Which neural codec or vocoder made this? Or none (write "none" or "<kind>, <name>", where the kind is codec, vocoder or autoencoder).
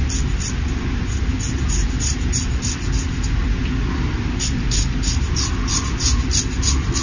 none